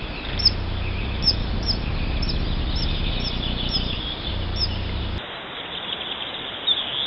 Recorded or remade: recorded